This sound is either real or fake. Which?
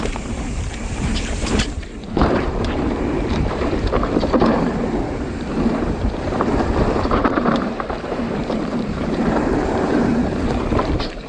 fake